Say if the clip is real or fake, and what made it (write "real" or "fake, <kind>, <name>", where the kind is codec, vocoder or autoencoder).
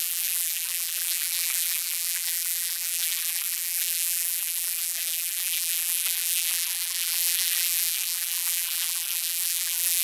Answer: fake, vocoder, BigVGAN v2